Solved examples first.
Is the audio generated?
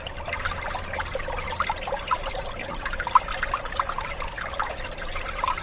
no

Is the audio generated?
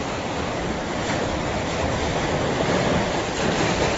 no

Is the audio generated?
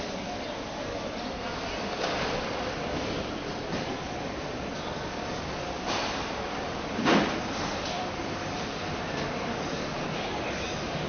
yes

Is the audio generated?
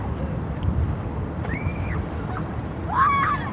yes